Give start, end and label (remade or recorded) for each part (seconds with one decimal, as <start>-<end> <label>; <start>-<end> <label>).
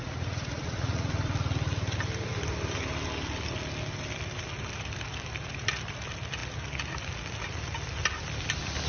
0.0-1.1 remade; 1.1-8.9 recorded